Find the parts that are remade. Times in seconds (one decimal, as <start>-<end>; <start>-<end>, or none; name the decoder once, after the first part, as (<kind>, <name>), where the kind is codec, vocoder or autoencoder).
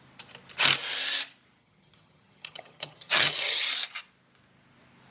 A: 1.6-3.7 (vocoder, HiFi-GAN)